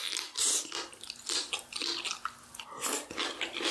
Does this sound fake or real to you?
real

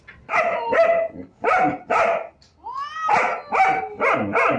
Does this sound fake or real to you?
real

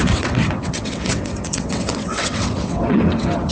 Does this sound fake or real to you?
fake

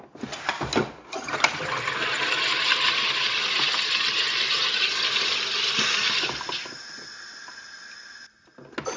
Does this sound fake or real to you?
real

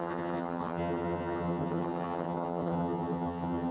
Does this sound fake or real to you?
fake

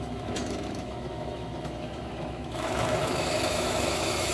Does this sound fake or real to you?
fake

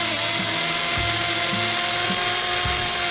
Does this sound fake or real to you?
real